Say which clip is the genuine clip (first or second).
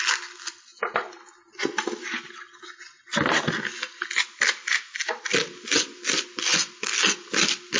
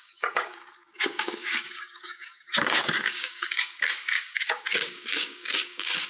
first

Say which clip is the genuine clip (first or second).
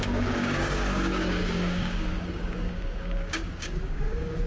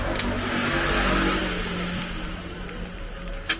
second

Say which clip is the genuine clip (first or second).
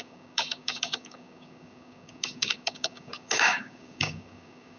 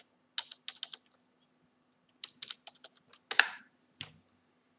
second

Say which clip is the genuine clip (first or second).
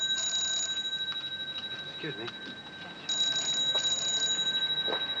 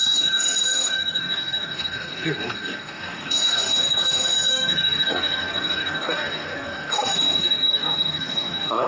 first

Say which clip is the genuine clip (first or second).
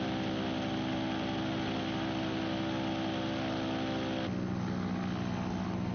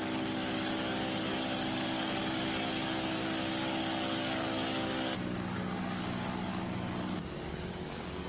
first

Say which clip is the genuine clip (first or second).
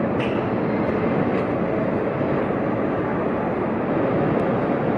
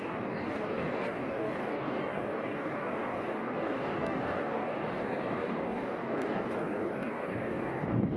first